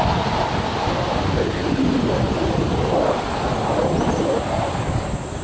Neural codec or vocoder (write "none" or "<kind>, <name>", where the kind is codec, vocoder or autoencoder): none